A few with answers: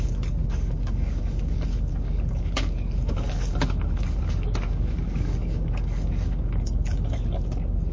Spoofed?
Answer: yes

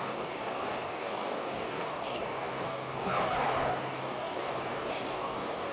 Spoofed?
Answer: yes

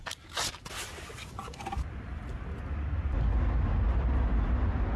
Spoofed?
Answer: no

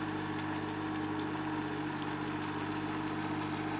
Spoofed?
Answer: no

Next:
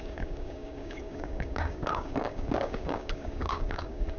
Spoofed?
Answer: yes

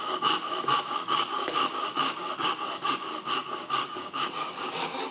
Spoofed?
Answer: yes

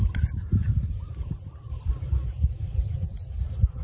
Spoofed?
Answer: no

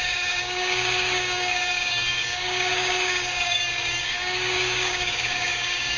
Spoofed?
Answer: yes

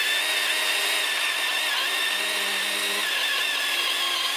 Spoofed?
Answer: no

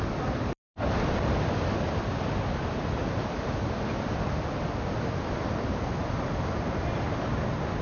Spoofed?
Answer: no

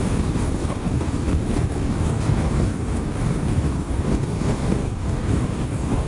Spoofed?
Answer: yes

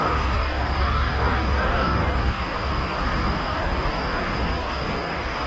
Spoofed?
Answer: yes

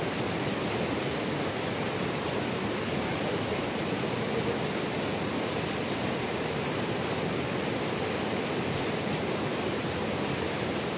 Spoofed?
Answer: no